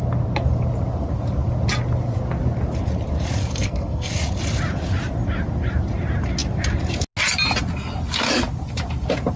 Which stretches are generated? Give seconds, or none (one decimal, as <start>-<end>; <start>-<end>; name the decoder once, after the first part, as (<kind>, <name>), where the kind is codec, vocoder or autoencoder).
3.4-4.1 (codec, SNAC)